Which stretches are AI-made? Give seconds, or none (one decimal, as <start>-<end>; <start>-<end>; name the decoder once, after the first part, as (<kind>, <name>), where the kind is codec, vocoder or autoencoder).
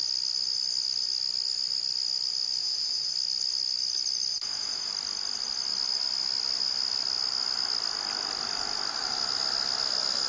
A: 2.6-3.1 (vocoder, Vocos); 4.3-4.9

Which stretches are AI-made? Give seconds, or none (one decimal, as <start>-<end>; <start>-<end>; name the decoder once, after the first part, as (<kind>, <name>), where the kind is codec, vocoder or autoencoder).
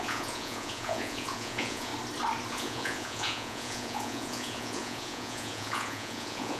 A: 0.0-1.9 (vocoder, Vocos); 2.5-6.6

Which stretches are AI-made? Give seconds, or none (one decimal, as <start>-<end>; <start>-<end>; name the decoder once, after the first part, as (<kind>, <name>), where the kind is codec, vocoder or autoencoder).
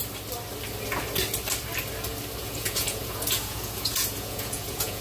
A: 2.4-5.0 (vocoder, Vocos)